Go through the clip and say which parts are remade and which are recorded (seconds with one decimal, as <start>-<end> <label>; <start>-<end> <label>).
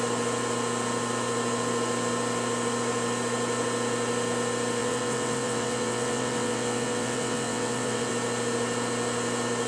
0.0-4.8 recorded; 4.8-8.1 remade; 8.1-9.7 recorded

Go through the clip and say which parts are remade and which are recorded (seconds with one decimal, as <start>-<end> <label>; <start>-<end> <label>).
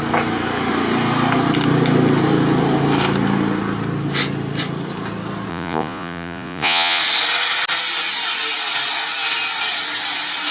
0.0-5.5 recorded; 5.5-7.0 remade; 7.0-10.5 recorded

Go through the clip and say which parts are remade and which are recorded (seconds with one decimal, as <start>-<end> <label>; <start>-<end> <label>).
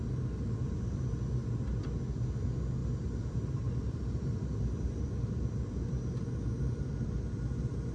0.0-2.8 recorded; 2.8-5.6 remade; 5.6-7.9 recorded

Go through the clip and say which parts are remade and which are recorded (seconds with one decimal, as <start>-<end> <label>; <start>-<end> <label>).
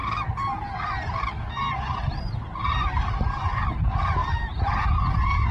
0.0-5.5 recorded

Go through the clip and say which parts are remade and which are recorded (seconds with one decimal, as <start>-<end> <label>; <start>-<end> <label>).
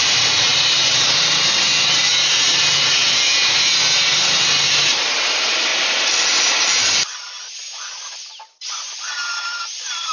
0.0-5.7 remade; 5.7-9.6 recorded; 9.6-10.1 remade